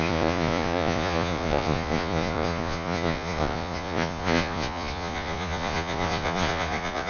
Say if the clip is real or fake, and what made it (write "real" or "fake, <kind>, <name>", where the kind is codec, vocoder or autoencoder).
fake, vocoder, Vocos